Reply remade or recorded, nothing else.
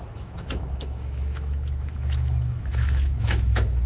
remade